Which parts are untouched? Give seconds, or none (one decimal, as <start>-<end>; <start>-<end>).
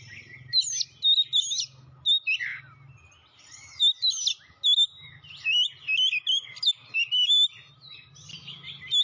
0.0-9.0